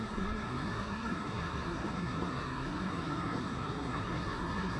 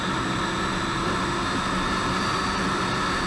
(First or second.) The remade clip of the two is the first